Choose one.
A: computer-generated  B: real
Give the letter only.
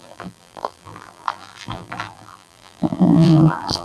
A